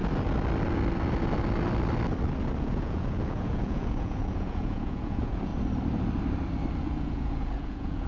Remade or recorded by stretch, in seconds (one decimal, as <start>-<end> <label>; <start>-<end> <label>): 0.0-2.6 recorded; 2.6-5.5 remade; 5.5-6.8 recorded; 6.8-8.1 remade